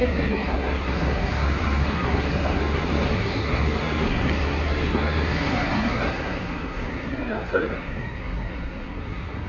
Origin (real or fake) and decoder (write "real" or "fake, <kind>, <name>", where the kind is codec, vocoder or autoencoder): fake, codec, SNAC